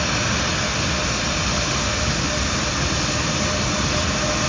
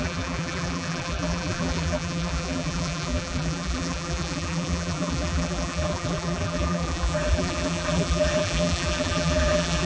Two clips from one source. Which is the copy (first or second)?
second